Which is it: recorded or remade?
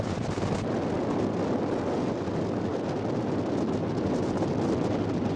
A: recorded